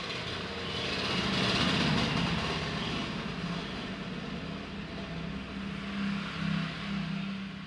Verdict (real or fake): real